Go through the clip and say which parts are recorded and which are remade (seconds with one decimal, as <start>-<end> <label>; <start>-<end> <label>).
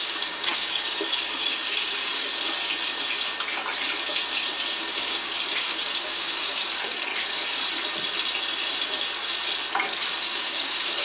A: 0.0-2.3 remade; 2.3-4.8 recorded; 4.8-7.1 remade; 7.1-10.2 recorded; 10.2-11.0 remade